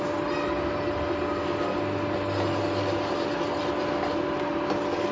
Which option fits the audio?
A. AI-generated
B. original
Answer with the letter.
B